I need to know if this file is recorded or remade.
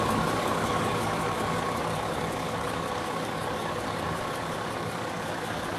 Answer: remade